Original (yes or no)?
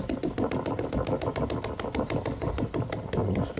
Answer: yes